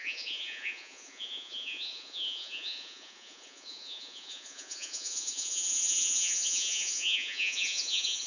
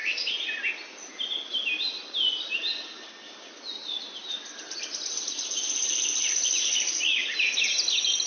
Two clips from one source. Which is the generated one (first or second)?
first